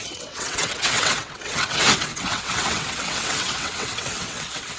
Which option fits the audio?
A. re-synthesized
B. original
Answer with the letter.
A